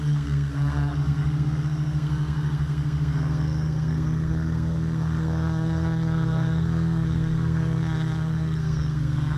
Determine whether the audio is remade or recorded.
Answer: remade